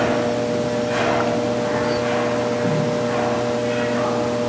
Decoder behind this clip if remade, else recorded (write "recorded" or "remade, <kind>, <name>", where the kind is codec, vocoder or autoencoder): recorded